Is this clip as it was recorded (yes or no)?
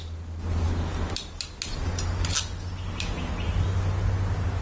yes